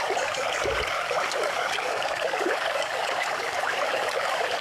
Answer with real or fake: fake